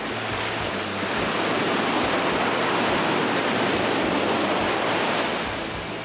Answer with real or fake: real